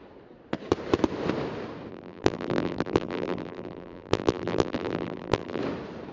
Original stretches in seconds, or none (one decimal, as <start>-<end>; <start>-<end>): 0.0-1.9; 5.6-6.1